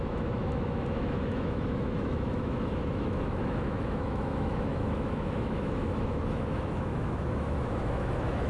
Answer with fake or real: fake